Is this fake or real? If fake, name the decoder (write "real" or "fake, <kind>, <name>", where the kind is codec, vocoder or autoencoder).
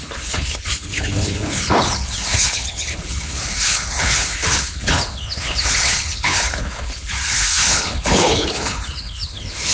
fake, codec, HILCodec